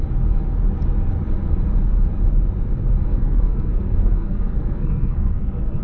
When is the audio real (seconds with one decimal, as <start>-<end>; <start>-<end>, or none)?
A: 0.0-3.1